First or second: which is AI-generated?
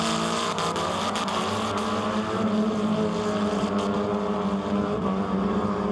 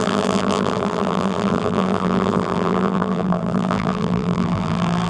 second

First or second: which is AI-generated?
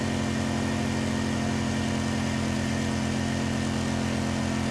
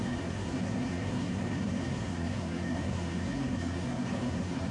second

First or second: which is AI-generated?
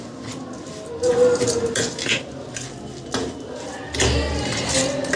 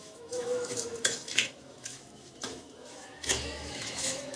second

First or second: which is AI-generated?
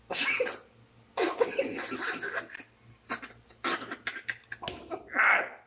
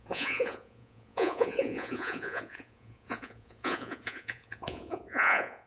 second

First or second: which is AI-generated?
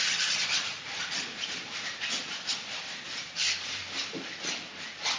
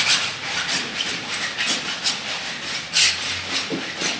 first